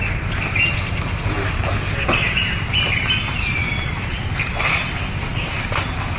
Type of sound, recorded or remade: recorded